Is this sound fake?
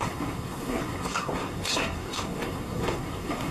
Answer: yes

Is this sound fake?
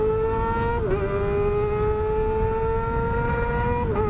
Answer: no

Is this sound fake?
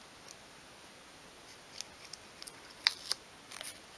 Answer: no